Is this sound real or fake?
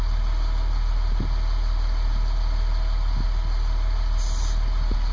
real